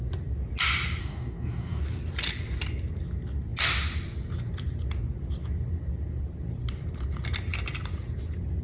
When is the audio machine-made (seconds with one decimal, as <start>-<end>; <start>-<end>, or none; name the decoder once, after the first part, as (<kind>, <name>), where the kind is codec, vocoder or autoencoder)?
1.0-1.8 (codec, DAC)